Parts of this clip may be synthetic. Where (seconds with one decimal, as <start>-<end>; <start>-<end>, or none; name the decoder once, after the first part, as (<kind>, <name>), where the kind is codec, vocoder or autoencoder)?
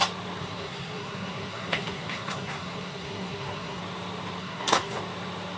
0.4-3.8 (codec, SNAC); 4.4-5.0